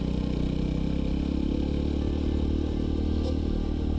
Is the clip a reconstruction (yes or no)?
no